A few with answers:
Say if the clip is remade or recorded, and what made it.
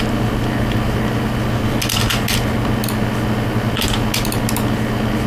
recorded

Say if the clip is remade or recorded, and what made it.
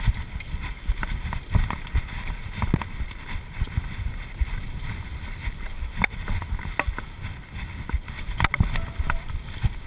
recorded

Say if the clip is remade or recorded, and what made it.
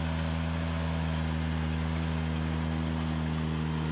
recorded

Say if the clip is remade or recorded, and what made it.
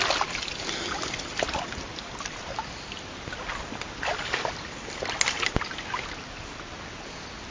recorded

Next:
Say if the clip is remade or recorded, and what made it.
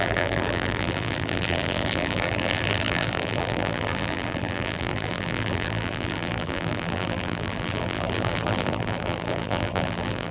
remade, vocoder, BigVGAN v2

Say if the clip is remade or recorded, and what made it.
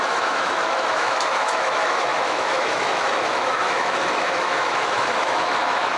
remade, autoencoder, DAC-VAE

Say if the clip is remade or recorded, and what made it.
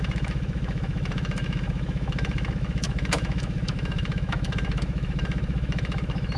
remade, autoencoder, DAC-VAE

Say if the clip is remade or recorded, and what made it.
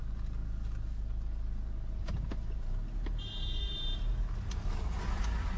recorded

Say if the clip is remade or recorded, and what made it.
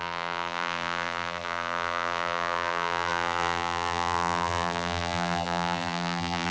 remade, vocoder, BigVGAN v2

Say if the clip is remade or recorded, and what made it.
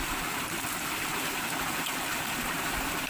remade, vocoder, BigVGAN v2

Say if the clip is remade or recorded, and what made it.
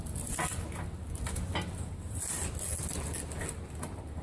recorded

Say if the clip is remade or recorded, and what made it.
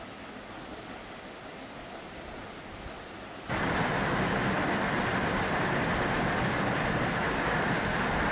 recorded